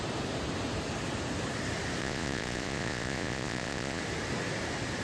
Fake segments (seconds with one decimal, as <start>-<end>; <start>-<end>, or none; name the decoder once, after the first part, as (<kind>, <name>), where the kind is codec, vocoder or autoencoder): 2.0-4.0 (vocoder, Vocos)